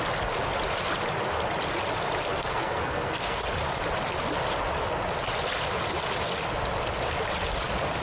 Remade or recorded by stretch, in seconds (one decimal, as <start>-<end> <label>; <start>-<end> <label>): 0.0-2.3 recorded; 2.3-3.4 remade; 3.4-8.0 recorded